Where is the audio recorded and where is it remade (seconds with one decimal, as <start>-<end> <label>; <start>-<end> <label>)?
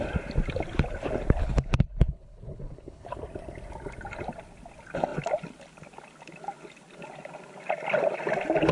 0.0-1.4 recorded; 1.4-3.2 remade; 3.2-8.7 recorded